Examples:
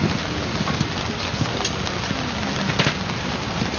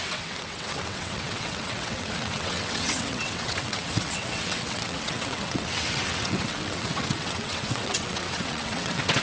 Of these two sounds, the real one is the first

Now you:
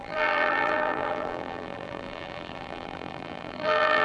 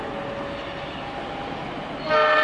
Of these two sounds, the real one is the second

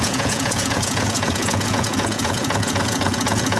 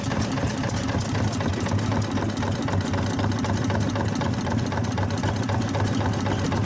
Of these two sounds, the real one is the second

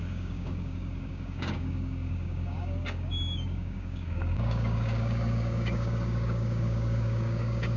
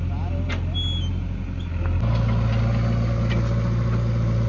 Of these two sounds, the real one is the second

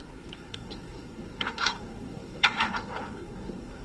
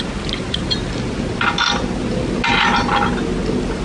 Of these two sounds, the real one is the second